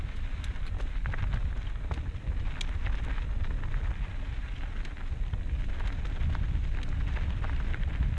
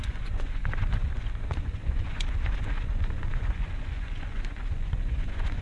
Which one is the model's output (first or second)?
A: second